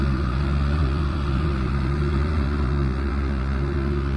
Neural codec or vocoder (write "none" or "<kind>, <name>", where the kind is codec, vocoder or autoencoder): vocoder, Vocos